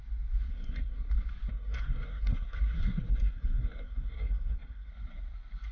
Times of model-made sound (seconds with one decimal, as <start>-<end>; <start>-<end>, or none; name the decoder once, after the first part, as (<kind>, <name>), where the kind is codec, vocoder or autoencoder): 0.5-1.1 (codec, SNAC); 1.5-4.9